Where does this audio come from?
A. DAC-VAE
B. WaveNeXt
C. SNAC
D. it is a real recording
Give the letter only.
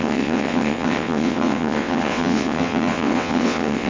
B